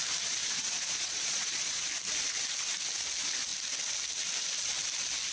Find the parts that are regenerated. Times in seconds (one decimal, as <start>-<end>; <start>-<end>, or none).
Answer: 0.4-1.9